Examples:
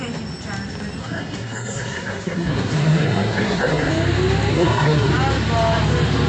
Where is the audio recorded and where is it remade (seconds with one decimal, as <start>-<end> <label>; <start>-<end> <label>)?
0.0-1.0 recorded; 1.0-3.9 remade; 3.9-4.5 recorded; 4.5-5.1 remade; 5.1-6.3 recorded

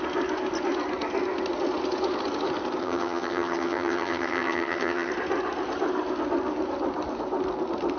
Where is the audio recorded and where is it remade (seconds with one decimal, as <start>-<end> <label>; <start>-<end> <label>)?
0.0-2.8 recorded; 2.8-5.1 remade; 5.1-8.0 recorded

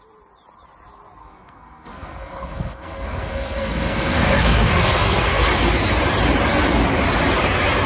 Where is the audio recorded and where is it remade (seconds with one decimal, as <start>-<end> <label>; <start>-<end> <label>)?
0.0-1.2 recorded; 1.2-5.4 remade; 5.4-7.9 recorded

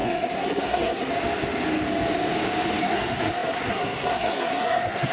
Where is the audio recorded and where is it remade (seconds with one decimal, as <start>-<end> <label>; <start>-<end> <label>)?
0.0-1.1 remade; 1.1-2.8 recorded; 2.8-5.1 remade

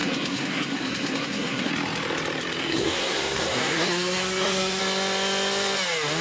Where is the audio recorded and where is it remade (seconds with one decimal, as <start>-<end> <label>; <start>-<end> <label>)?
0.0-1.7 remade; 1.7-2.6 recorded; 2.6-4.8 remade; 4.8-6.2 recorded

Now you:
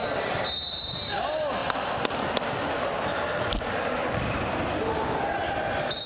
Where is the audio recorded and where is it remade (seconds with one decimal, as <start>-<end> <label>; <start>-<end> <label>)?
0.0-6.1 recorded

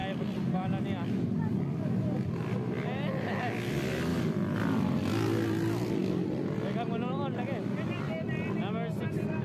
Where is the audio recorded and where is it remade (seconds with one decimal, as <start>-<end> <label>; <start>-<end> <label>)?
0.0-4.1 recorded; 4.1-4.9 remade; 4.9-9.4 recorded

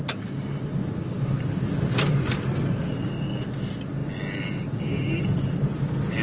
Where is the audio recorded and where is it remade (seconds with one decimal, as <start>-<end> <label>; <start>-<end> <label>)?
0.0-6.2 recorded